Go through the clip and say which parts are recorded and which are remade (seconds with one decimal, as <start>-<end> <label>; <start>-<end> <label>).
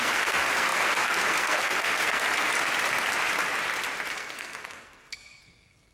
0.0-2.5 remade; 2.5-4.1 recorded; 4.1-5.9 remade